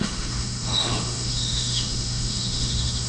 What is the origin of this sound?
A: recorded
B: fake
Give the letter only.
B